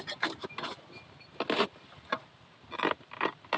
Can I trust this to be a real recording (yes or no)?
yes